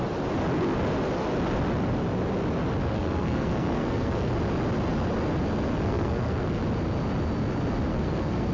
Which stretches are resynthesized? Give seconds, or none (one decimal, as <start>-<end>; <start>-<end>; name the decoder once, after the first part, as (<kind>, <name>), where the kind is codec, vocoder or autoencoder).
2.8-4.3 (codec, SNAC); 5.7-6.6; 7.9-8.5